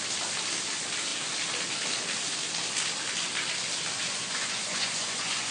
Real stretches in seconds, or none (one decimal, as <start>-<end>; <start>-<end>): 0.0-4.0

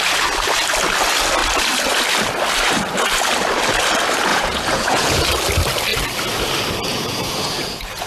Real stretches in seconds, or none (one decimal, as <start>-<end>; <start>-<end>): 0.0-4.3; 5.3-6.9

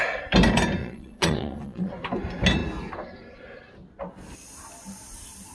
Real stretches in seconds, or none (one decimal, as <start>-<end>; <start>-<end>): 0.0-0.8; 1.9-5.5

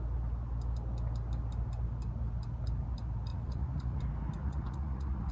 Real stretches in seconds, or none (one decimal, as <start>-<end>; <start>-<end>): 0.0-3.3; 4.0-4.4

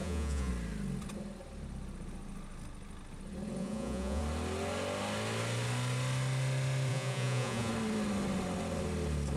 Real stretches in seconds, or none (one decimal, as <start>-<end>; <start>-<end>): 0.5-3.6; 4.2-6.9; 7.7-9.4

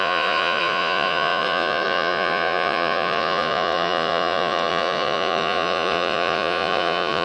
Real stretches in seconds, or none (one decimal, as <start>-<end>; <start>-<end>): none

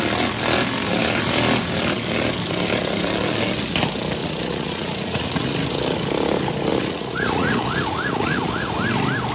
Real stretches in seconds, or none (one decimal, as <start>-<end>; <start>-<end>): 0.0-4.2; 5.5-6.7; 8.7-9.3

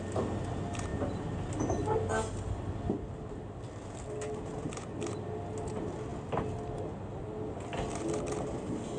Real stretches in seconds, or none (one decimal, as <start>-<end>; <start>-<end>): 0.0-9.0